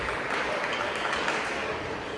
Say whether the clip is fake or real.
fake